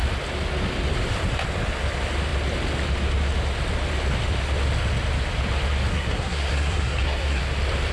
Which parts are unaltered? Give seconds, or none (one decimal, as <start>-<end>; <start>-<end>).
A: 0.0-5.9; 7.4-7.9